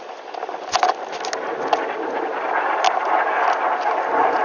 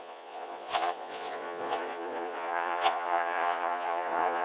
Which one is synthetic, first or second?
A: second